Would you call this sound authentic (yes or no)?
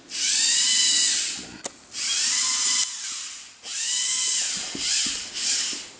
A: yes